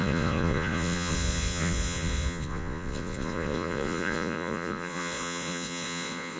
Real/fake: fake